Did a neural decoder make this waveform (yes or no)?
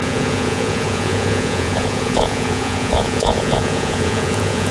yes